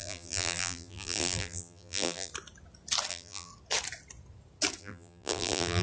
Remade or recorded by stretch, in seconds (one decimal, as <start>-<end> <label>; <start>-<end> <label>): 0.0-2.3 remade; 2.3-3.1 recorded; 3.1-3.5 remade; 3.5-4.8 recorded; 4.8-5.8 remade